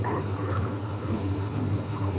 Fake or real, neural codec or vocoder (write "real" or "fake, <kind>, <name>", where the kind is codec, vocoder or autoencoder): fake, codec, HILCodec